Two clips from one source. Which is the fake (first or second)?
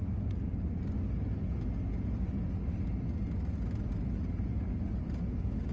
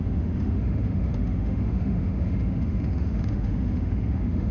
second